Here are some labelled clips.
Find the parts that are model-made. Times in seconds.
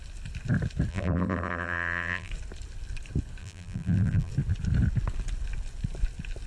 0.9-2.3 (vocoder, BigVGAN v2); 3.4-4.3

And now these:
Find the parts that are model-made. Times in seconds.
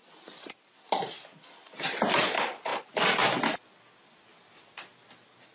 none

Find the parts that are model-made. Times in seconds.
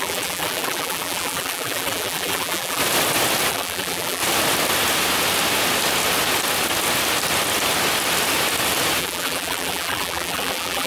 0.0-2.8 (vocoder, BigVGAN v2); 3.5-4.2; 9.0-10.9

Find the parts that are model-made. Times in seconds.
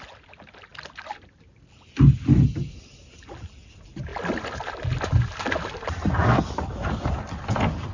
none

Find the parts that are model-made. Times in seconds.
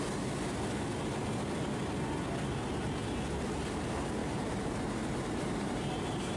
4.2-6.4 (vocoder, BigVGAN v2)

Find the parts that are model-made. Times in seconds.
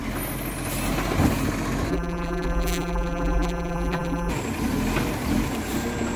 1.9-4.3 (vocoder, BigVGAN v2)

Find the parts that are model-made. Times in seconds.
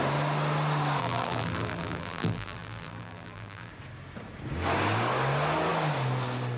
1.0-3.7 (vocoder, BigVGAN v2)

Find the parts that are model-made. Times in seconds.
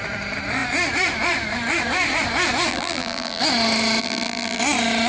2.7-3.4 (vocoder, BigVGAN v2); 4.0-4.6